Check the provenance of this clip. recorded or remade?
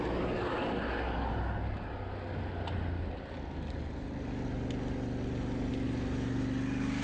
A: recorded